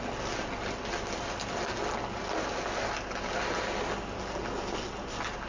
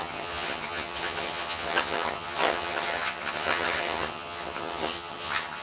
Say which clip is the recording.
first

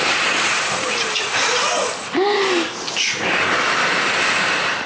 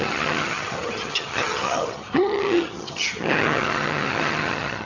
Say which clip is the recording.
first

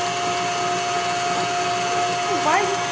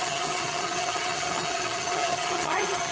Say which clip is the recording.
first